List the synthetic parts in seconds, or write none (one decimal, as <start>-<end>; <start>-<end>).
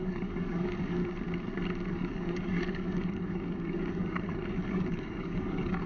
0.0-1.0; 1.9-5.9